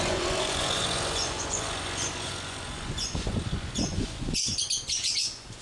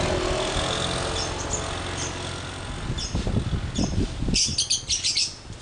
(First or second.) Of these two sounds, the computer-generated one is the first